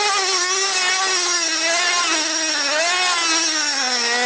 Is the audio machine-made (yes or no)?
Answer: no